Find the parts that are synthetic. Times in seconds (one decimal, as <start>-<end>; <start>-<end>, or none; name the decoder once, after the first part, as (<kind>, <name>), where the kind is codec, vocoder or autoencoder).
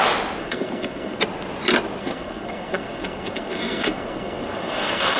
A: 0.4-1.2 (codec, SNAC); 2.0-5.2